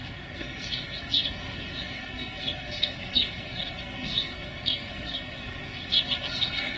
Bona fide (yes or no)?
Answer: no